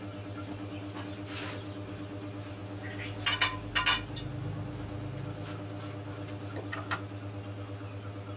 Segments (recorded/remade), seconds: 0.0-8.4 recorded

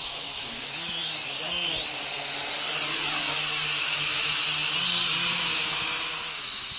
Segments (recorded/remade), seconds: 0.0-1.0 remade; 1.0-3.8 recorded; 3.8-4.4 remade; 4.4-5.3 recorded; 5.3-6.8 remade

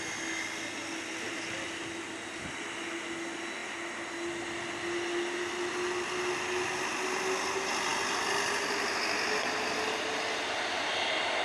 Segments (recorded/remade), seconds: 0.0-11.4 recorded

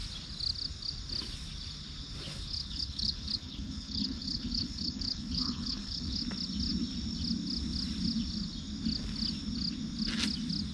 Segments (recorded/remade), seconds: 0.0-2.3 recorded; 2.3-6.2 remade; 6.2-10.7 recorded

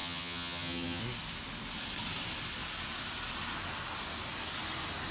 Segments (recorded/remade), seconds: 0.0-1.0 remade; 1.0-5.1 recorded

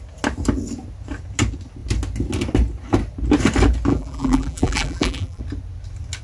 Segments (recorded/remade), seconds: 0.0-3.9 recorded; 3.9-5.4 remade; 5.4-6.2 recorded

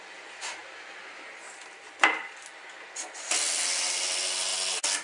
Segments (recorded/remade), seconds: 0.0-5.0 recorded

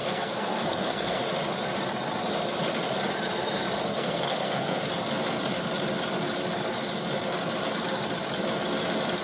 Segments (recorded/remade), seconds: 0.0-1.2 remade; 1.2-3.9 recorded; 3.9-4.9 remade; 4.9-9.2 recorded